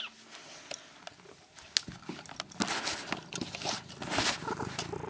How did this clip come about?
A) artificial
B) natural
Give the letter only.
B